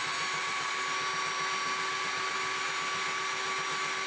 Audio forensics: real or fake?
real